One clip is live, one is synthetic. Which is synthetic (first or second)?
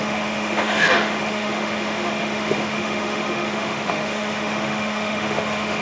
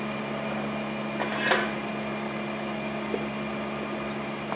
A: first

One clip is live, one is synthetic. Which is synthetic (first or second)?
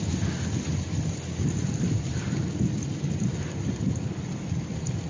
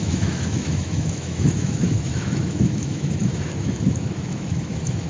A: second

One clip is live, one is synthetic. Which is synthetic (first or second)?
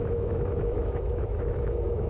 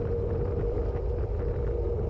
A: first